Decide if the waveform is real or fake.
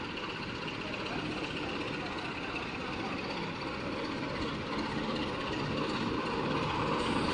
real